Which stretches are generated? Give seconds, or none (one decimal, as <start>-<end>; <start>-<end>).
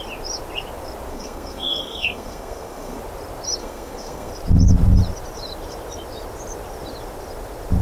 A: 1.1-3.0; 3.6-4.3